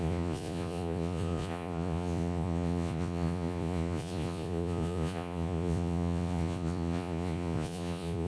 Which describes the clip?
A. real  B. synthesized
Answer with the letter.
B